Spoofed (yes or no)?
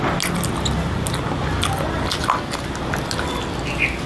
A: no